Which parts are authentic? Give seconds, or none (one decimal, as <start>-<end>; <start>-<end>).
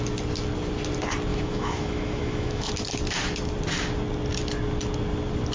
0.0-1.3; 2.7-5.5